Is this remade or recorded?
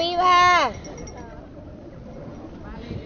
recorded